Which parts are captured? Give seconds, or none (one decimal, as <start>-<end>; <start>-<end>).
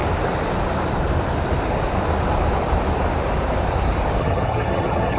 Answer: 0.0-4.2